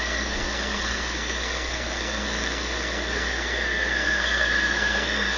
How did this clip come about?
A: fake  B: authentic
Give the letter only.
A